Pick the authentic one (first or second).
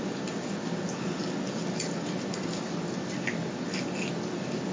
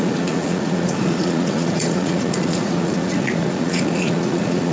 first